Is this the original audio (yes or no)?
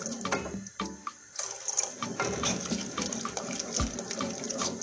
yes